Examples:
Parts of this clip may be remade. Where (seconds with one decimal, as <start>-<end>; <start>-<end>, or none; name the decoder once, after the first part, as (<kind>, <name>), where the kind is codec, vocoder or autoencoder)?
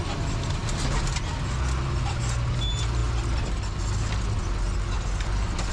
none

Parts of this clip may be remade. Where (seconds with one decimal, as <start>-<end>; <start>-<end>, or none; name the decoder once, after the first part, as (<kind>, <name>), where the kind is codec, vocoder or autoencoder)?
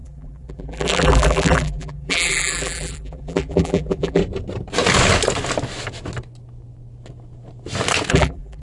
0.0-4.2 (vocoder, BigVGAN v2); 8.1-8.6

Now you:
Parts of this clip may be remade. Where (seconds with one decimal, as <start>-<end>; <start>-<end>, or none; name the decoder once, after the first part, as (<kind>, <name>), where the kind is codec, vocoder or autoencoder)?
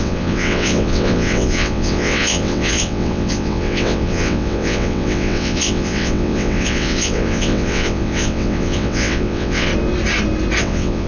0.0-9.7 (vocoder, WaveNeXt); 10.6-11.1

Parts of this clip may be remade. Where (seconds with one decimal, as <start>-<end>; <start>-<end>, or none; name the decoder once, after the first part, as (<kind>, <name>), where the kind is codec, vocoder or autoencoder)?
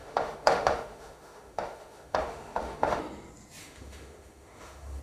0.0-3.0 (autoencoder, DAC-VAE); 3.6-5.0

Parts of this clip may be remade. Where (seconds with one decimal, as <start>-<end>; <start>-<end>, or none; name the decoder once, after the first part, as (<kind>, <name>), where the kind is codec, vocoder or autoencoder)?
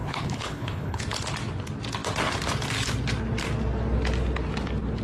0.0-1.0 (codec, HILCodec)